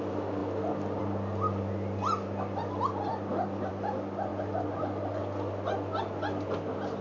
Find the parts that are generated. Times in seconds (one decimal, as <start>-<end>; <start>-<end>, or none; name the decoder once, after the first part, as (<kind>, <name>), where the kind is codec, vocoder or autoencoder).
none